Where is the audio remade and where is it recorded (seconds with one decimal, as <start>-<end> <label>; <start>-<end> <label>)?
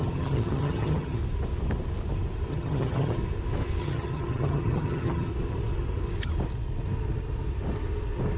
0.0-1.2 remade; 1.2-2.5 recorded; 2.5-3.2 remade; 3.2-3.8 recorded; 3.8-5.3 remade; 5.3-8.4 recorded